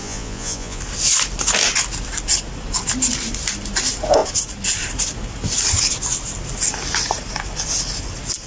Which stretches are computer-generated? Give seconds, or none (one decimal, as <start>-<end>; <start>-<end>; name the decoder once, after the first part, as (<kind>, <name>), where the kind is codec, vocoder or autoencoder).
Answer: 0.0-0.8 (vocoder, Vocos)